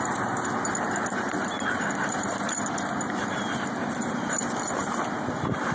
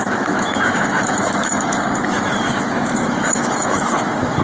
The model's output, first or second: second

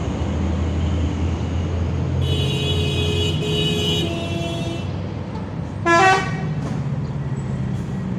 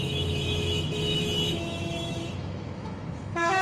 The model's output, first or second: second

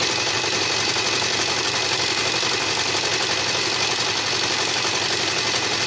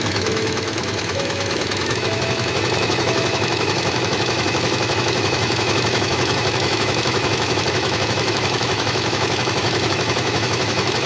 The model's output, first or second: second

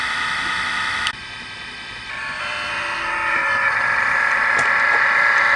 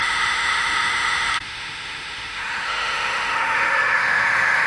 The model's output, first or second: second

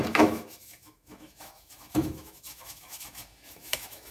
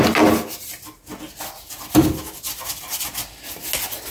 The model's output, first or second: first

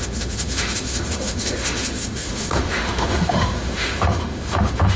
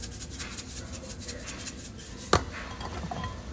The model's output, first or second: first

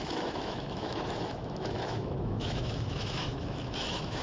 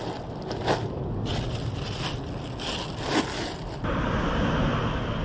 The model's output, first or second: first